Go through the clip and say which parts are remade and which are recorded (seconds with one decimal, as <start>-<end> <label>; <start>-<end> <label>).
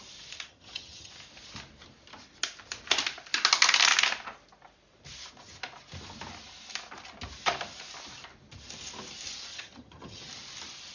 0.0-0.5 recorded; 0.5-1.1 remade; 1.1-9.5 recorded; 9.5-10.2 remade; 10.2-10.9 recorded